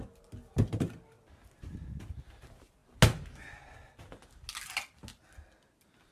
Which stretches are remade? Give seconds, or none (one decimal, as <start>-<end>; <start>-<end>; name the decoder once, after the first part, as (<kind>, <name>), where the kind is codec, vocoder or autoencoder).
none